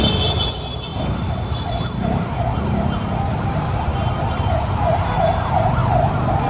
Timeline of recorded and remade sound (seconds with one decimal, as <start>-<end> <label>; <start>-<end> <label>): 0.0-6.5 recorded